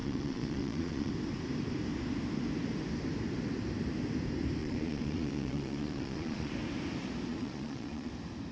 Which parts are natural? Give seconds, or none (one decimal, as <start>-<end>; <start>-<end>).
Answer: 1.1-4.6; 6.5-7.3; 8.1-8.5